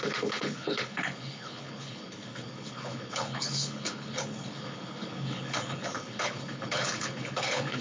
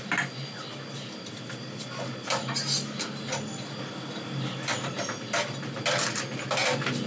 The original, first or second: second